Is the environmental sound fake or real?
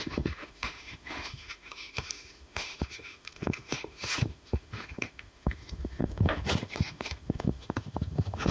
fake